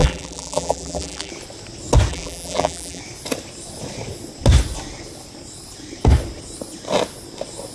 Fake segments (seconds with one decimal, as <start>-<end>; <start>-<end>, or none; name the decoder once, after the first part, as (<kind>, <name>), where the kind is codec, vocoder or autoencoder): 0.0-1.3 (vocoder, BigVGAN v2); 2.1-3.0